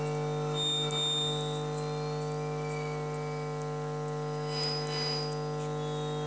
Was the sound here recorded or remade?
recorded